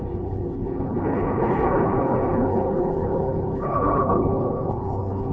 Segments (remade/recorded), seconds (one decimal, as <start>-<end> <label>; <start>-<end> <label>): 0.0-5.3 remade